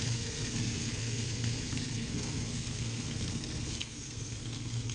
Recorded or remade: remade